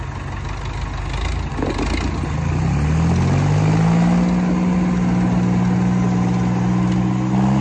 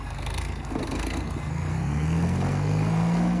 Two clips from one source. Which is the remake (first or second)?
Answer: second